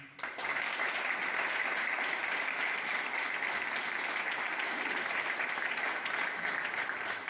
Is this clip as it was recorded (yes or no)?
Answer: yes